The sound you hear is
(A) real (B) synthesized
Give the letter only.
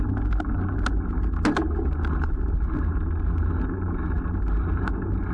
A